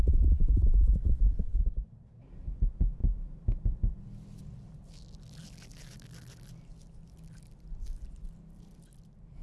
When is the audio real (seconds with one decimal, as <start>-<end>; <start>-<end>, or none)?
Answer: 0.0-9.4